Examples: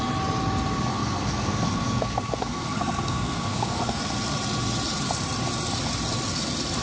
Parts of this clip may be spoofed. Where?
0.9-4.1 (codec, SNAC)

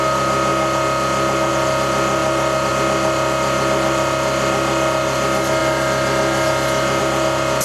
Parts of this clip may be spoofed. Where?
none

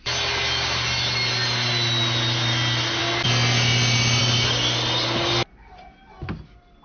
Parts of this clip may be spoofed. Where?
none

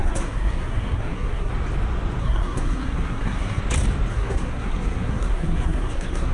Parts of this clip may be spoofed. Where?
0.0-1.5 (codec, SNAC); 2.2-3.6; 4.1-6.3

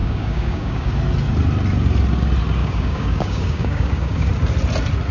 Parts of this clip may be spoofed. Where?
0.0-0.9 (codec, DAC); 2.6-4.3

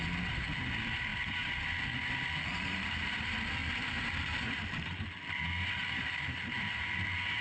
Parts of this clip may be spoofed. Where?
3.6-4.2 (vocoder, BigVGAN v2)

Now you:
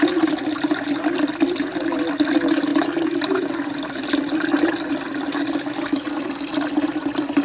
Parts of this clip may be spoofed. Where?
2.7-4.9 (vocoder, BigVGAN v2)